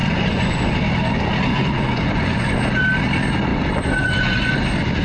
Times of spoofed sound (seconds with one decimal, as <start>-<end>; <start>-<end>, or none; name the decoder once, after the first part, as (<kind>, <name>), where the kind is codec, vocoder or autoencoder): 0.0-0.7 (vocoder, Vocos); 1.5-2.6; 3.5-4.6

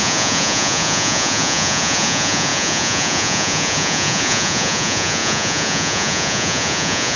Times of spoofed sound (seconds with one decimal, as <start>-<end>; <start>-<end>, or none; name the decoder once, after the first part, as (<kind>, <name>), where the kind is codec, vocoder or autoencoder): 0.0-7.2 (vocoder, Vocos)

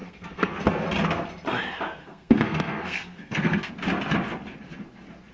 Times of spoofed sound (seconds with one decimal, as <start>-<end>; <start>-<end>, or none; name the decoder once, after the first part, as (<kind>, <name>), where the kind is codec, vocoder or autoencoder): 0.0-0.6 (codec, SNAC); 2.0-3.7

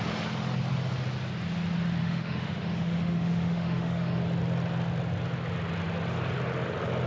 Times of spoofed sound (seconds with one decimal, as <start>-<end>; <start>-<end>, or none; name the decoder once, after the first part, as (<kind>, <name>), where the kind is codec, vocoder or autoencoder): 2.0-4.2 (autoencoder, DAC-VAE)